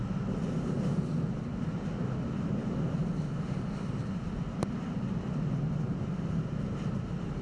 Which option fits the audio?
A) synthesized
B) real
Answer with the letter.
B